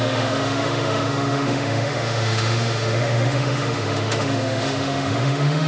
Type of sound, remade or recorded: remade